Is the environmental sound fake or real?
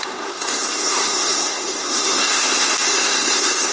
fake